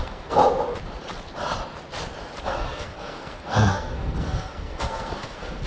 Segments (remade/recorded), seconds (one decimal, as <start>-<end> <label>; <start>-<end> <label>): 0.0-0.4 remade; 0.4-2.4 recorded; 2.4-5.7 remade